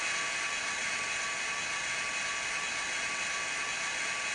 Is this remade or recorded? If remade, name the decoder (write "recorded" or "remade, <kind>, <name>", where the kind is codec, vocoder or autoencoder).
recorded